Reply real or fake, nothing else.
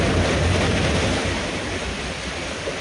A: real